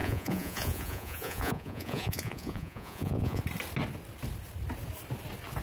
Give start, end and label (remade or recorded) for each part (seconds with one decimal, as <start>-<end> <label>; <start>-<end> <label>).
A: 0.0-3.4 remade; 3.4-5.6 recorded